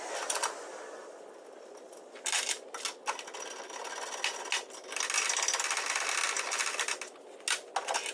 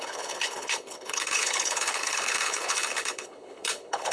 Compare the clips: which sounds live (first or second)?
first